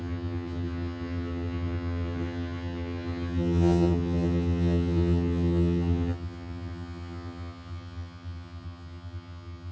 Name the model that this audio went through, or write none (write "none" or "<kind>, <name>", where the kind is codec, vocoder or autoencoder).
vocoder, HiFi-GAN